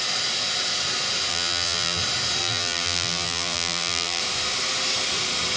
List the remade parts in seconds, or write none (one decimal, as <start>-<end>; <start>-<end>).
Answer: 1.3-2.0; 2.4-4.2